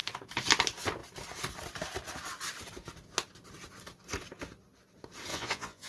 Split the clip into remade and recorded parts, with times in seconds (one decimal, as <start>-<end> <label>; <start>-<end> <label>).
0.0-5.3 recorded; 5.3-5.9 remade